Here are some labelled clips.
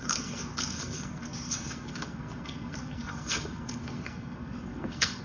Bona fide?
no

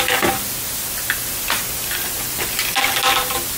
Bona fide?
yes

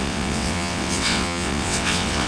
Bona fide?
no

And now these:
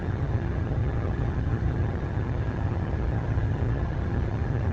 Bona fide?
no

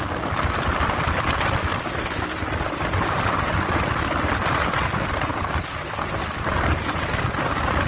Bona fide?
yes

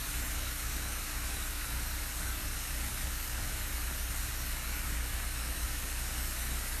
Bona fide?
no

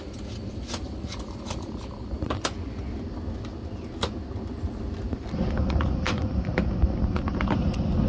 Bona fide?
yes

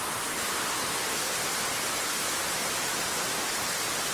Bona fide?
yes